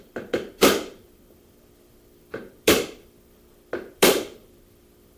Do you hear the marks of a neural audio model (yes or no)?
yes